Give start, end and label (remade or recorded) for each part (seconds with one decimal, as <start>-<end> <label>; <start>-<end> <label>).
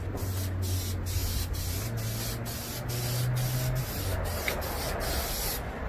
0.0-5.9 recorded